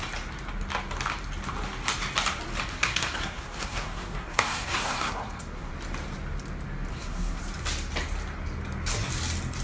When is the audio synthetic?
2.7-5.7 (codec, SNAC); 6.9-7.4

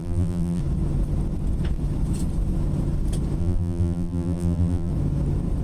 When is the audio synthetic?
0.0-0.6 (vocoder, BigVGAN v2); 3.4-4.9

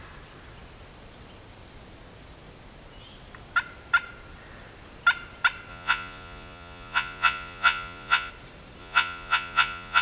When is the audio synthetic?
5.7-8.3 (vocoder, Vocos); 8.8-10.0

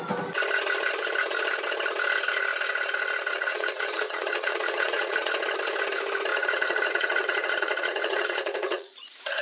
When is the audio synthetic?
3.3-5.3 (vocoder, Vocos); 6.3-9.4

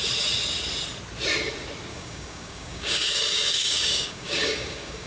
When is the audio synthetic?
1.9-5.1 (codec, DAC)